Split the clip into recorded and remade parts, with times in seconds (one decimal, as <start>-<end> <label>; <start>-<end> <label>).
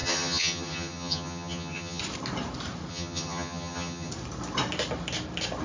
0.0-2.0 remade; 2.0-2.9 recorded; 2.9-4.1 remade; 4.1-5.6 recorded